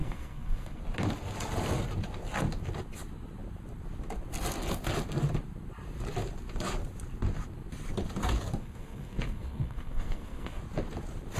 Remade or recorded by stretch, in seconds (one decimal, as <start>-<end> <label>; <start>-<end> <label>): 0.0-0.8 remade; 0.8-8.6 recorded; 8.6-10.6 remade; 10.6-11.4 recorded